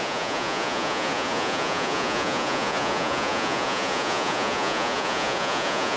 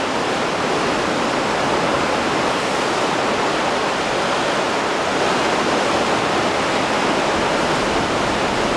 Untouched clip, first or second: second